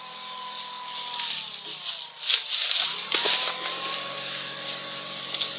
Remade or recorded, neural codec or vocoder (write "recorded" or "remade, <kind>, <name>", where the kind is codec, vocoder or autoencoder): recorded